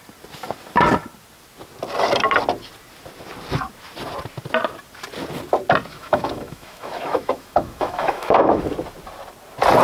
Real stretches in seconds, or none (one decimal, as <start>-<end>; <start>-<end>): 0.0-5.9; 8.6-9.8